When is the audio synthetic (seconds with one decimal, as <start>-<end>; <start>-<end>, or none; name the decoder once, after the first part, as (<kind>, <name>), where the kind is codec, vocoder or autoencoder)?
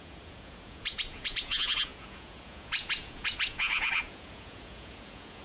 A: 0.0-5.4 (vocoder, Vocos)